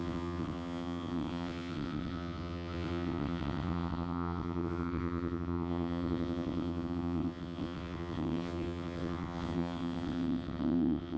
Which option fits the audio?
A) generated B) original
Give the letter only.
A